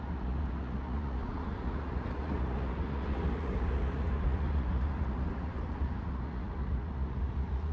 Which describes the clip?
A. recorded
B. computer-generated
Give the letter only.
B